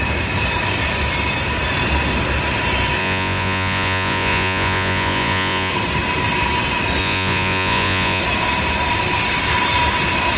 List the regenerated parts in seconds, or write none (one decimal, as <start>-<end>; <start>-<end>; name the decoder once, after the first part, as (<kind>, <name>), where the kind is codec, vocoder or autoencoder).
3.0-5.7 (vocoder, Vocos); 7.0-8.2

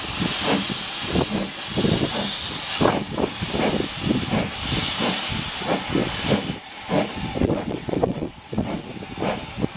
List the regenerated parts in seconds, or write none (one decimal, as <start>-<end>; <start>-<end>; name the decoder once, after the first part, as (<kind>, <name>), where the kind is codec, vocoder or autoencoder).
7.4-8.7 (vocoder, WaveNeXt)